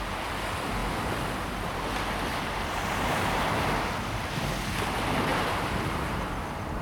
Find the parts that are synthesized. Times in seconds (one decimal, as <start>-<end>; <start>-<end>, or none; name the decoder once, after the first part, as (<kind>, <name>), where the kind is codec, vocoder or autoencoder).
2.3-3.5 (vocoder, BigVGAN v2); 5.3-6.8